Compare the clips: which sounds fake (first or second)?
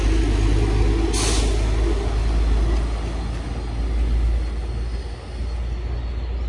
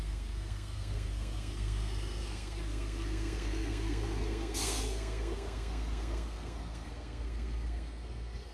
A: second